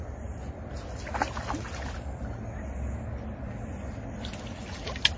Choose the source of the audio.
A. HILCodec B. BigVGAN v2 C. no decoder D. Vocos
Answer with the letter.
C